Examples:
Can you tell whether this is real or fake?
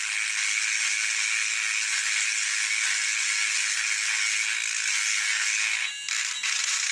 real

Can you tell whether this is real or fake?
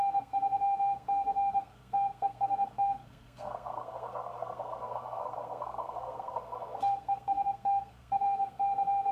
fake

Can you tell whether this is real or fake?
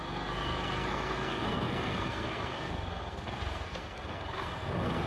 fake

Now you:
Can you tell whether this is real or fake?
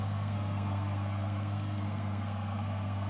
fake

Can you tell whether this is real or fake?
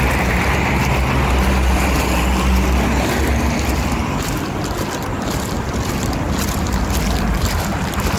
real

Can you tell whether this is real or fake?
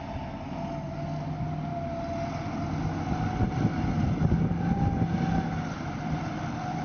real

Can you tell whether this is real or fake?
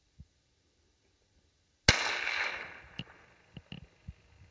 real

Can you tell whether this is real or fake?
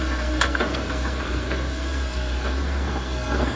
fake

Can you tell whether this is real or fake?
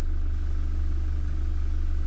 real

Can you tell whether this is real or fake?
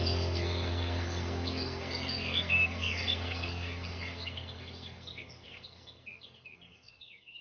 fake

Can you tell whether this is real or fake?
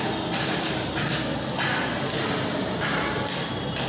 real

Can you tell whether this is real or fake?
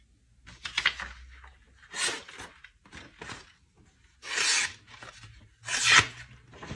real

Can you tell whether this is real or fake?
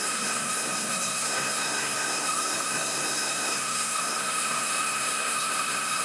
fake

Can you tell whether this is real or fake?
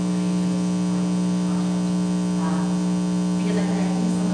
real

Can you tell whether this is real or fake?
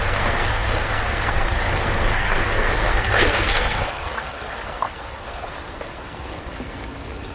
fake